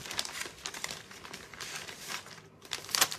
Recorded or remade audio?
recorded